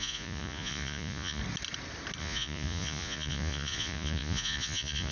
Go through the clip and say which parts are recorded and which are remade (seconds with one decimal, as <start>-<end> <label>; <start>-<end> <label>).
0.0-1.4 remade; 1.4-2.2 recorded; 2.2-5.1 remade